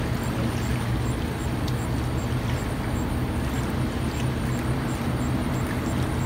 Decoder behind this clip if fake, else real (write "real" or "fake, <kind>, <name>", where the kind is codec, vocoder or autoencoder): real